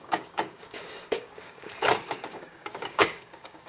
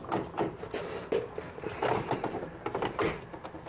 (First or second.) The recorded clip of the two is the second